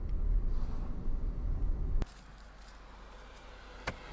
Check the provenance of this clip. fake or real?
real